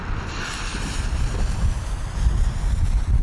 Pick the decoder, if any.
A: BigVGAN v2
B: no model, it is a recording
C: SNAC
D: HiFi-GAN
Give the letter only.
A